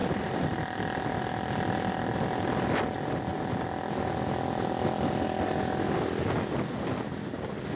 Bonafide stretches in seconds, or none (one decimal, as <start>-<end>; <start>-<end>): 0.0-7.8